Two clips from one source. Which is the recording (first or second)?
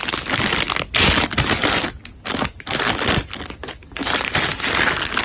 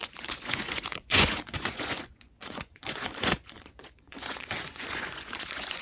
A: first